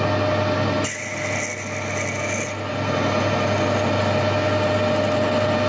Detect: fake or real real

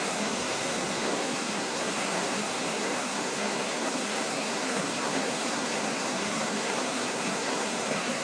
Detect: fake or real fake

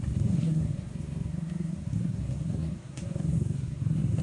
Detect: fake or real fake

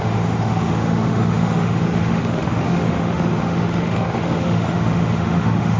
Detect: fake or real fake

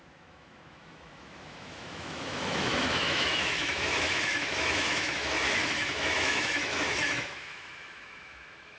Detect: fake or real fake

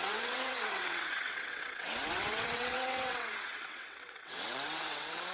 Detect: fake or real fake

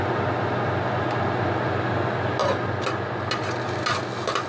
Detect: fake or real real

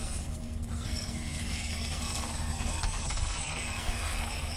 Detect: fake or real fake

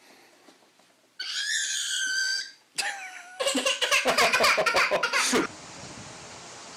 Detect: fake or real real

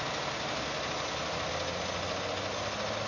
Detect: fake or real real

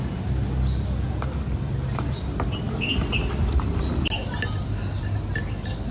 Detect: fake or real real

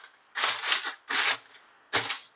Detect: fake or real real